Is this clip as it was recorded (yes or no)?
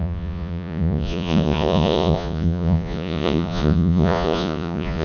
no